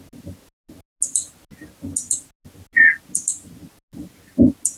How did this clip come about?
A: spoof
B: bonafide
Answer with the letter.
B